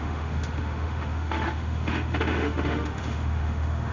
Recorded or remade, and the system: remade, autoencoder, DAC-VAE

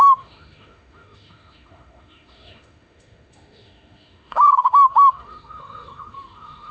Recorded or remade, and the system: remade, autoencoder, DAC-VAE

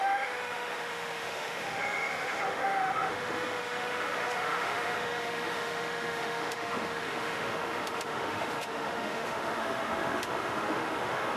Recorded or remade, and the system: remade, autoencoder, DAC-VAE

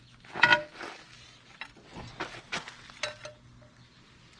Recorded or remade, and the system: recorded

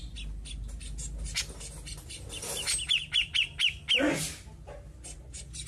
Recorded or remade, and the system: recorded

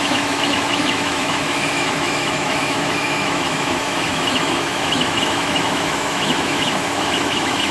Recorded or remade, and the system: remade, autoencoder, DAC-VAE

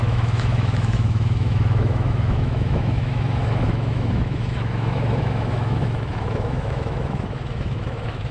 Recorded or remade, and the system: remade, autoencoder, DAC-VAE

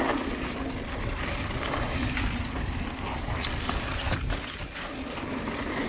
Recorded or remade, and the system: recorded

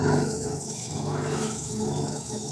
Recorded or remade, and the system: remade, autoencoder, DAC-VAE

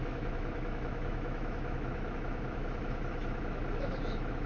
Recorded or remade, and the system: remade, autoencoder, DAC-VAE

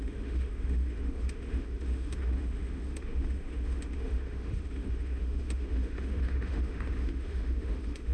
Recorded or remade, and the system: remade, autoencoder, DAC-VAE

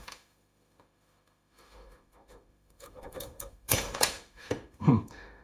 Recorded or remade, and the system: remade, autoencoder, DAC-VAE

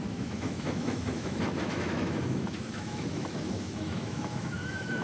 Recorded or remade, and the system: remade, autoencoder, DAC-VAE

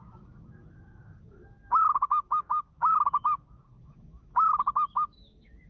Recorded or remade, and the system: remade, autoencoder, DAC-VAE